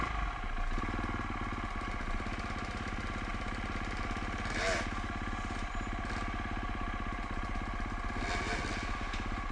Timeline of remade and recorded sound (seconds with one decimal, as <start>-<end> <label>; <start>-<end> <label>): 0.0-9.5 recorded